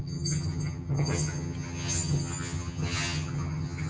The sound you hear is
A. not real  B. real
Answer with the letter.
A